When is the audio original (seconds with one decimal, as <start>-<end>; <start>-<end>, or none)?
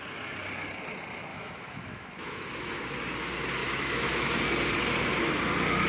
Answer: 0.0-1.3; 2.8-3.6; 4.4-5.9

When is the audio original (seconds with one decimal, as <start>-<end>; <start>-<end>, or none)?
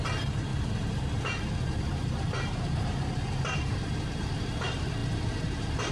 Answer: 0.5-1.8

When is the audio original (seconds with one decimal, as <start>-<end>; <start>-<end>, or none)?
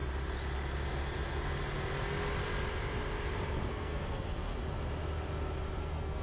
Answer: 0.0-3.7; 4.5-5.8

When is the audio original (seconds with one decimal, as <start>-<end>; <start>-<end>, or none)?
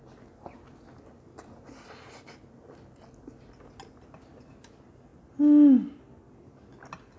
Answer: 0.0-7.2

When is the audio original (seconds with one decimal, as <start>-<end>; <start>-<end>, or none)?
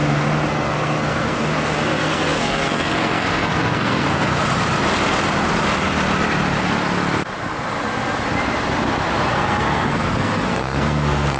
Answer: 0.0-0.5; 4.4-9.3